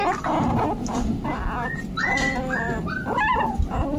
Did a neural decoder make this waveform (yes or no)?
no